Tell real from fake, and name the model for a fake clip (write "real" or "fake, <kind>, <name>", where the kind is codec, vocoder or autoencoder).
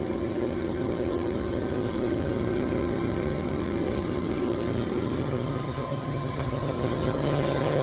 fake, vocoder, HiFi-GAN